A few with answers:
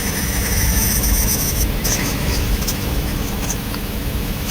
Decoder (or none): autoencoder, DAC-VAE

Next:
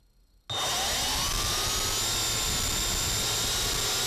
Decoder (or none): none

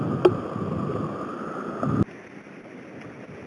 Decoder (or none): none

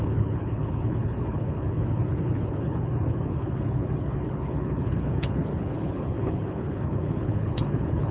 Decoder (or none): codec, HILCodec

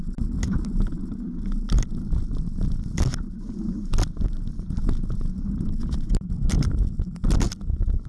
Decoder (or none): none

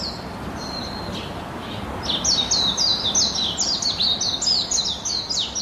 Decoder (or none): none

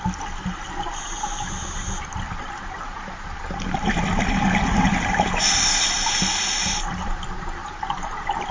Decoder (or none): none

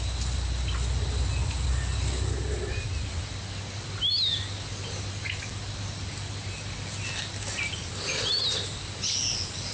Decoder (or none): none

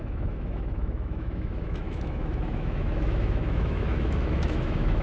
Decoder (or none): autoencoder, DAC-VAE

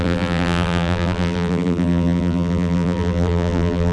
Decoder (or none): vocoder, BigVGAN v2